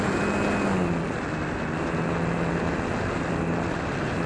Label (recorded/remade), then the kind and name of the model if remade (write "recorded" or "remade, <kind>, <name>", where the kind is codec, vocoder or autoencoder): recorded